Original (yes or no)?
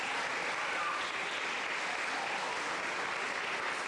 yes